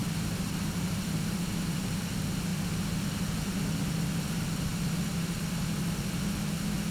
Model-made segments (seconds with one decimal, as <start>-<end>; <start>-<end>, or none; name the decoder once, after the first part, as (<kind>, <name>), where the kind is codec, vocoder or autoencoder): 0.0-2.1 (vocoder, BigVGAN v2); 2.5-3.0